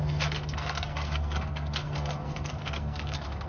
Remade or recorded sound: remade